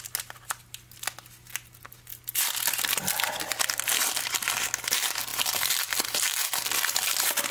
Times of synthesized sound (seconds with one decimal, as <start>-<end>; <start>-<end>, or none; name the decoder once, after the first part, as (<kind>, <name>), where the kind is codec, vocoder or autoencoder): 5.3-6.5 (vocoder, BigVGAN v2)